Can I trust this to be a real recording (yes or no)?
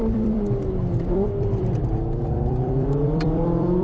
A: no